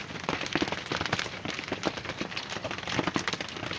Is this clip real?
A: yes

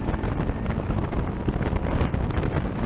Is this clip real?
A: yes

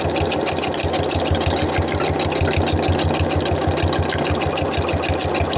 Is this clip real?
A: yes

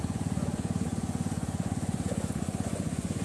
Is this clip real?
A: no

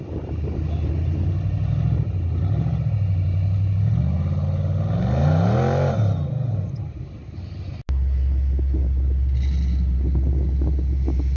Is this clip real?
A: yes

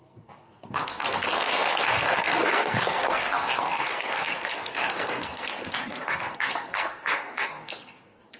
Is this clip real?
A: no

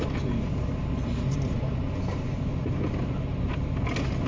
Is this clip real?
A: yes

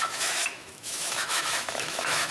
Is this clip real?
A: no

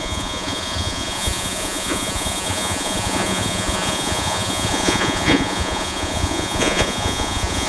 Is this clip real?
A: no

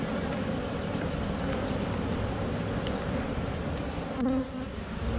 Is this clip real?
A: yes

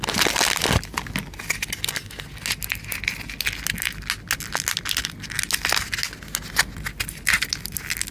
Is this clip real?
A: yes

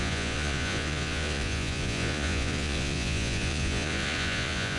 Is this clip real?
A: no